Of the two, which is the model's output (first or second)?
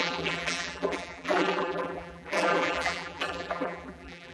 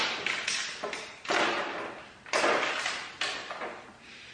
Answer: first